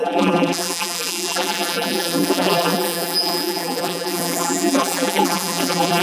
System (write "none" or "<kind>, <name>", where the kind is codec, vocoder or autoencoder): vocoder, BigVGAN v2